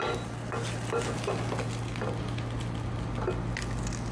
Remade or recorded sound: recorded